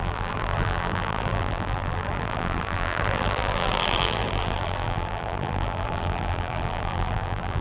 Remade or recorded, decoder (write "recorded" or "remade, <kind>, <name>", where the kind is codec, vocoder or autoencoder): remade, vocoder, BigVGAN v2